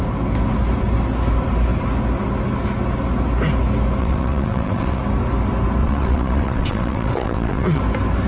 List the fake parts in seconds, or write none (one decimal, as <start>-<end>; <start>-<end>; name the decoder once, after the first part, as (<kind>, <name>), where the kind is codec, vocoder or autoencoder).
4.0-5.0 (vocoder, WaveNeXt); 5.8-7.8